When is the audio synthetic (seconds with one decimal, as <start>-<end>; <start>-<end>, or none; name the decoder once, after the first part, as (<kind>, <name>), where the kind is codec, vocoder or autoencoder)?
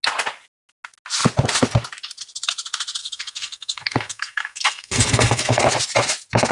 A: 3.0-5.6 (codec, SNAC)